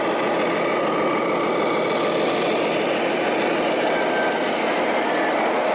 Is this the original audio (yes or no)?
yes